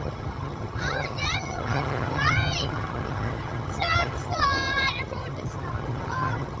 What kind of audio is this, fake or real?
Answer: fake